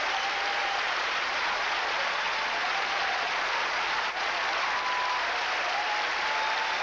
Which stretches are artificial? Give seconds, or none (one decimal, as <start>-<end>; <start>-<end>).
0.6-4.4